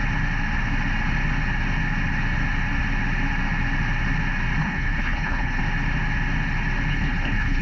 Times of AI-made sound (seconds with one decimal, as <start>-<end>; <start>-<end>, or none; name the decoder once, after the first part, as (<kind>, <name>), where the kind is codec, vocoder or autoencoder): 4.6-5.6 (codec, HILCodec); 6.9-7.6